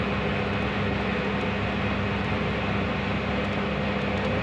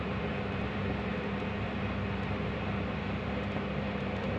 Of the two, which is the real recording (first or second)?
first